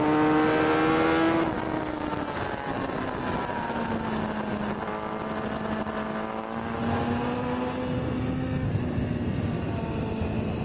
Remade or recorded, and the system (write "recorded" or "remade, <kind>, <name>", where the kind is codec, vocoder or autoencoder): recorded